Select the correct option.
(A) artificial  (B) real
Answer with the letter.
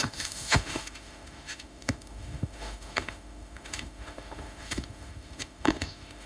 A